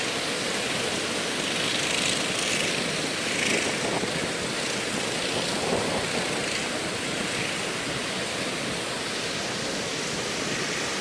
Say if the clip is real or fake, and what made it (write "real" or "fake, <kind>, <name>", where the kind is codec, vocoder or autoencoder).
real